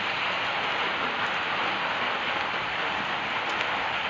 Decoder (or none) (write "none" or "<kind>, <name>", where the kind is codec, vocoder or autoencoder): none